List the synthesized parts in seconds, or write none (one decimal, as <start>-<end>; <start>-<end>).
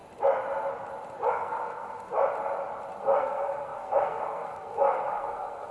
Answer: 1.3-2.1; 3.0-5.7